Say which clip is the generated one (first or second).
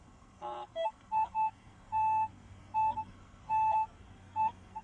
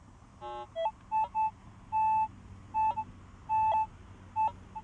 first